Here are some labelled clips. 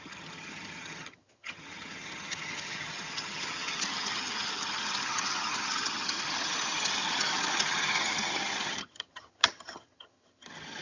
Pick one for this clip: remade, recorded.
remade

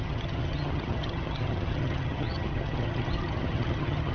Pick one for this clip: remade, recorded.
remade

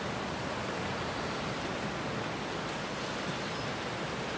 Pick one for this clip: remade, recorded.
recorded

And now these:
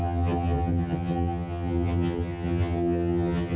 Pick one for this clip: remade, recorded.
remade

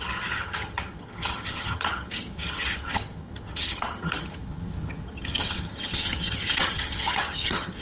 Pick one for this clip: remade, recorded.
remade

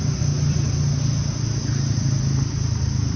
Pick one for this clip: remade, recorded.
recorded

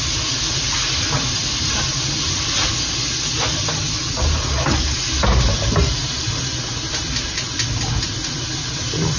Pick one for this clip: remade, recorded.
recorded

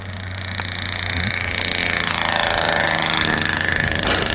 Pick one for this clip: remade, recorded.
recorded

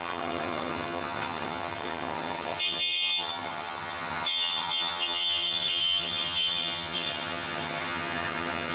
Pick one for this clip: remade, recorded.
remade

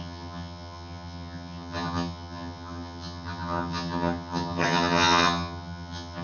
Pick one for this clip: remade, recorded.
remade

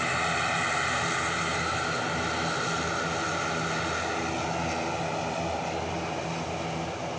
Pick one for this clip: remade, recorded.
recorded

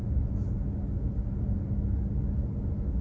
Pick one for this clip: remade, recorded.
recorded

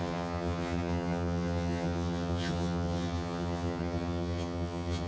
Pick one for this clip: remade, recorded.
remade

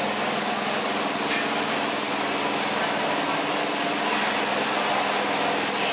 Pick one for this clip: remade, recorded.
recorded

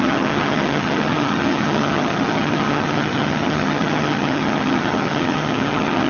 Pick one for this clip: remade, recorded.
remade